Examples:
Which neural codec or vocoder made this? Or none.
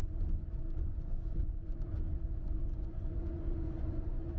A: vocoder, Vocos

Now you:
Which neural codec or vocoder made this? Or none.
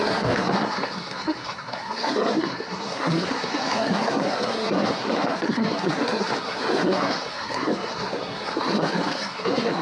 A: codec, SNAC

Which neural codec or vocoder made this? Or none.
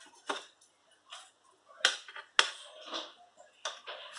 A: none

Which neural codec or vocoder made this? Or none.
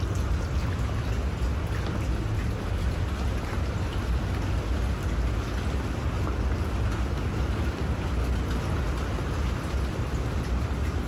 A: none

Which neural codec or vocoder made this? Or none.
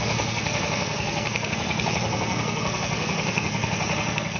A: codec, SNAC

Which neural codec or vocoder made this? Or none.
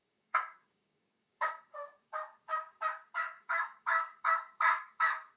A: codec, DAC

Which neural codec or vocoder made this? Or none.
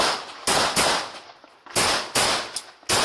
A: none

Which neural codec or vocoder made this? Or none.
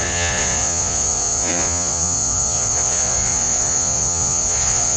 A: vocoder, Vocos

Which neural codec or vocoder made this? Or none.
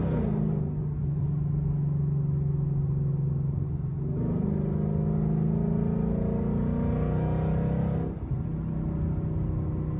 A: none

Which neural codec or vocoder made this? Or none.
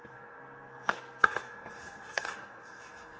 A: codec, SNAC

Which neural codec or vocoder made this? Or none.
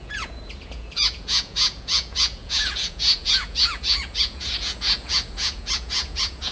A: vocoder, Vocos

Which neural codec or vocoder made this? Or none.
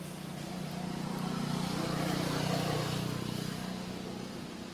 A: none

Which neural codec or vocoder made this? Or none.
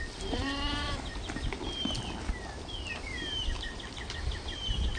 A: none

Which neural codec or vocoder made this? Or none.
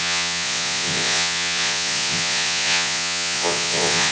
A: vocoder, Vocos